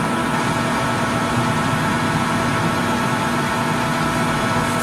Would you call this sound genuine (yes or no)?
yes